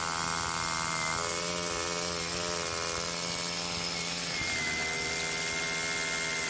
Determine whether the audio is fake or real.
real